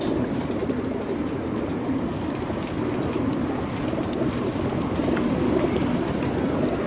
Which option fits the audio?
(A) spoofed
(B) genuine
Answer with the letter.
B